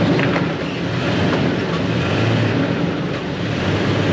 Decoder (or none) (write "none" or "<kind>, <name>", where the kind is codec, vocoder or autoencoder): none